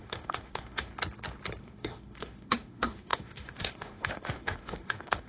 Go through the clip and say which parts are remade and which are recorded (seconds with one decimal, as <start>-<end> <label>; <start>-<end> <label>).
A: 0.0-0.9 remade; 0.9-1.6 recorded; 1.6-5.3 remade